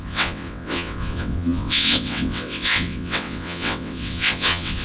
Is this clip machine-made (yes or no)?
yes